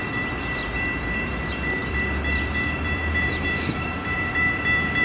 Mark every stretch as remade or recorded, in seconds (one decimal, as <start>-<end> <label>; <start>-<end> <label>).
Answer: 0.0-5.0 remade